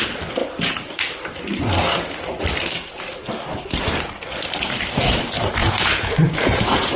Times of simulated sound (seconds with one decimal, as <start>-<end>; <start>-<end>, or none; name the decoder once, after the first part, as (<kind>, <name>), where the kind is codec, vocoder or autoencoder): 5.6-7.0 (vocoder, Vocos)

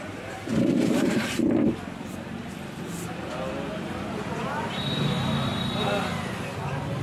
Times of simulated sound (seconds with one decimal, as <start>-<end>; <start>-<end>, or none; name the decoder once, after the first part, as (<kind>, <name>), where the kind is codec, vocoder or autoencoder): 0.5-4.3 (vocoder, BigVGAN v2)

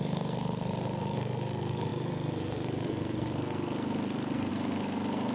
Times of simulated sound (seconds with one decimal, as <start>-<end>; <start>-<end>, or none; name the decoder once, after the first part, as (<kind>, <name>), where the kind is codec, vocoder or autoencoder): 0.0-5.3 (codec, SNAC)

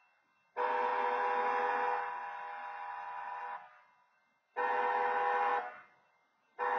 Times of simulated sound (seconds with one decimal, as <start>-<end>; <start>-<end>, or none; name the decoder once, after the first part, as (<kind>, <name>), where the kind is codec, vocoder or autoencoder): none

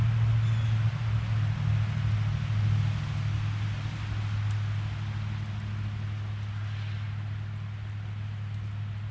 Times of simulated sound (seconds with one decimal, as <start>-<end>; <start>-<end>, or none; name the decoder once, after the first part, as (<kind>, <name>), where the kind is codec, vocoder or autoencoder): none

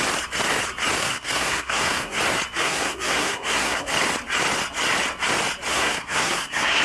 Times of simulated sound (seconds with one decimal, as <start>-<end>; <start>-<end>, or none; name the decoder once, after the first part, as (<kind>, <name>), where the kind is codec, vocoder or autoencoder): 1.0-2.2 (codec, SNAC); 2.6-3.9; 5.7-6.8

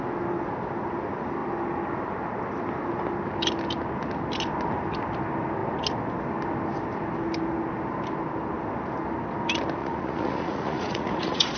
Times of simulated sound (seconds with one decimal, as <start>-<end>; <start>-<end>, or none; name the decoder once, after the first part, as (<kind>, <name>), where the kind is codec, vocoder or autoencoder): 9.8-11.6 (vocoder, Vocos)

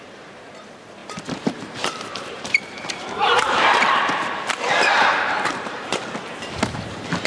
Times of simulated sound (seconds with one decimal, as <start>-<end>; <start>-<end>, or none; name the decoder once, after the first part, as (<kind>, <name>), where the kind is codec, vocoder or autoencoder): 0.0-5.9 (vocoder, BigVGAN v2); 6.6-7.3